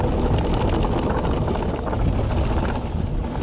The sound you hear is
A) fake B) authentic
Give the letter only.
B